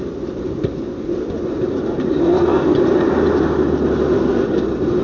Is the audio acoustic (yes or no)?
yes